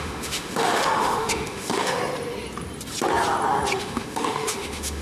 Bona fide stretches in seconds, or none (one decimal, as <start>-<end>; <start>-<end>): 2.0-3.8